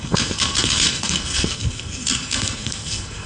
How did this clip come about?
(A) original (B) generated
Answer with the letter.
B